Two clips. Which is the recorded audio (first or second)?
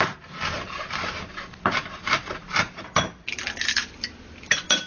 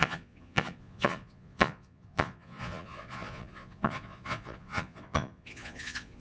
first